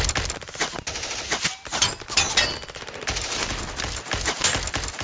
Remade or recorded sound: recorded